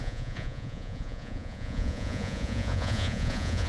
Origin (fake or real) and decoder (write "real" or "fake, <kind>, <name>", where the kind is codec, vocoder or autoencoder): fake, vocoder, Vocos